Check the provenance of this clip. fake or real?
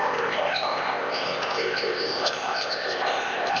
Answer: fake